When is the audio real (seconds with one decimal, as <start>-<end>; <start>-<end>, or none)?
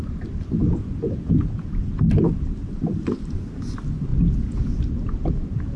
0.0-0.6; 1.9-4.1; 4.7-5.8